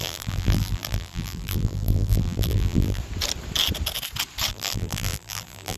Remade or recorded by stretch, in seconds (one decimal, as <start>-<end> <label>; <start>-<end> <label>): 0.0-3.0 remade; 3.0-4.5 recorded; 4.5-5.8 remade